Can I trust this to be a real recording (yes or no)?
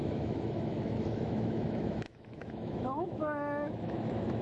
no